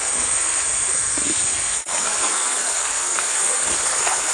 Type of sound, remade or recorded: remade